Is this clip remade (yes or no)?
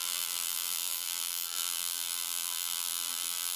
yes